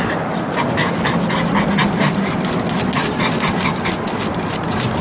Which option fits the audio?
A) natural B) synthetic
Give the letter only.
A